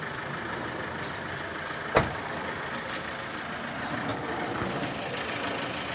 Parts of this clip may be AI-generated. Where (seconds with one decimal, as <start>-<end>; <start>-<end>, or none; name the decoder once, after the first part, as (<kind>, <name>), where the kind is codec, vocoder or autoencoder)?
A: none